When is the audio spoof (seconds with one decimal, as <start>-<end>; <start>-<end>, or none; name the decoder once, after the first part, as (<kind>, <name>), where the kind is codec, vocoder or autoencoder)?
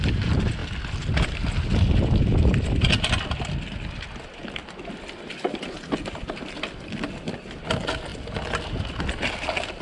none